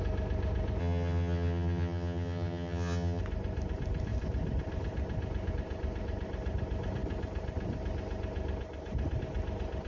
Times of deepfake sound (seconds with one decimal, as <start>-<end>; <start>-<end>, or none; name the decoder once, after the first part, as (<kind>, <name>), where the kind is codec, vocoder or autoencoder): 0.8-3.2 (vocoder, HiFi-GAN)